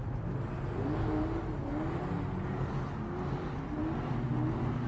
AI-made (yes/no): no